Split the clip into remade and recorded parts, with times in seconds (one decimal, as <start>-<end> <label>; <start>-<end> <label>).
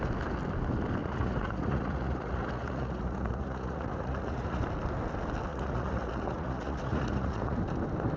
0.0-1.0 recorded; 1.0-4.6 remade; 4.6-5.5 recorded; 5.5-7.6 remade; 7.6-8.2 recorded